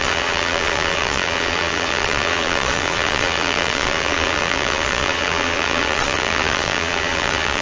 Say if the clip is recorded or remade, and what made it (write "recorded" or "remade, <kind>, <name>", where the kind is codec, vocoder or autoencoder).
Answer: remade, vocoder, Vocos